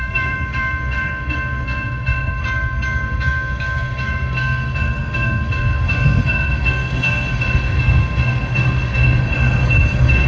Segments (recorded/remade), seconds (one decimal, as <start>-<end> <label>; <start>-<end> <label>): 0.0-10.3 remade